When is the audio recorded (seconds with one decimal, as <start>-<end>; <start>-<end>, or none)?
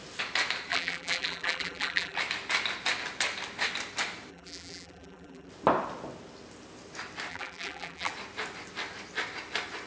0.0-0.7; 2.2-4.3; 5.5-7.3; 8.1-9.9